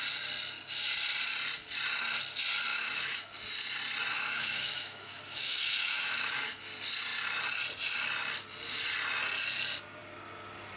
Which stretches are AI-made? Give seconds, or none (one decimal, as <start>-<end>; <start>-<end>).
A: 2.7-3.3; 4.1-6.5